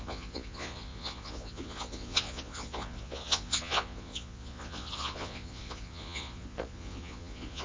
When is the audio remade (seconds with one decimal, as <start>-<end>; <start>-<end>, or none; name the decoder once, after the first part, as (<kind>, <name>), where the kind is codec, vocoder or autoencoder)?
0.0-7.6 (vocoder, Vocos)